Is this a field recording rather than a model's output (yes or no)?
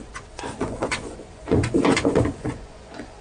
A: no